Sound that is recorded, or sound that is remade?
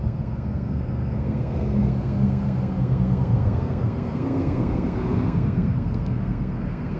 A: remade